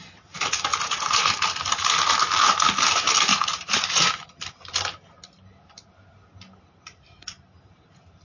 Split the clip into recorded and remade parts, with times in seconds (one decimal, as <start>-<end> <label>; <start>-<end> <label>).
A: 0.0-0.7 recorded; 0.7-1.3 remade; 1.3-3.3 recorded; 3.3-4.1 remade; 4.1-8.2 recorded